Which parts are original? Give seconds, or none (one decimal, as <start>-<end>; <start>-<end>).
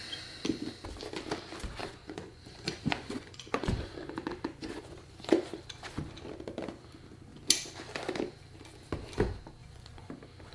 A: 0.0-1.8; 5.6-9.6; 10.1-10.5